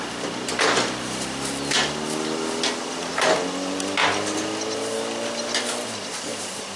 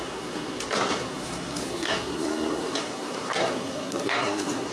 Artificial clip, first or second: second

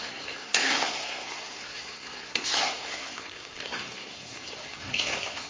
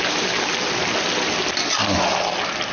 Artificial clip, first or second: first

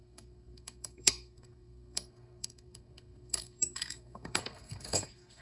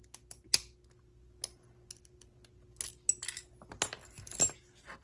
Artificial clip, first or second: first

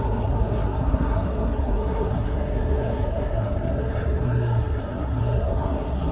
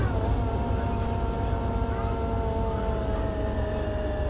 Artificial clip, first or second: first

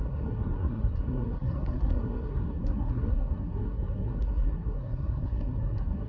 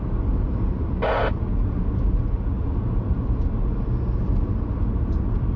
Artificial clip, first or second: first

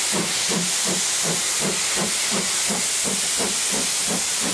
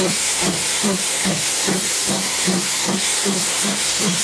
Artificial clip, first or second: second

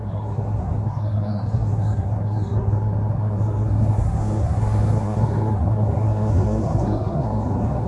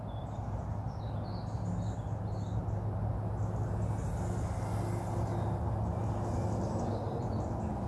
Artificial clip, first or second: first